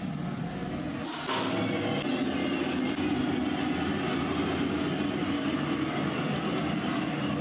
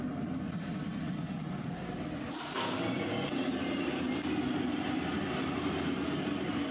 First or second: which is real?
first